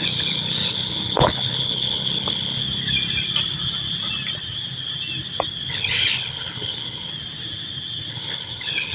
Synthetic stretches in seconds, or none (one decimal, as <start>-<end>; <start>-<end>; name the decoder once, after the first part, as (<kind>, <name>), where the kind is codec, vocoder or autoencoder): 0.0-2.6 (codec, HILCodec); 5.7-7.1; 8.1-8.9